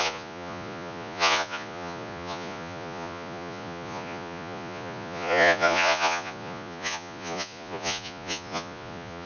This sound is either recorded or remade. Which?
remade